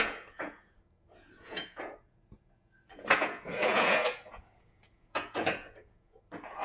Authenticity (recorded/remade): remade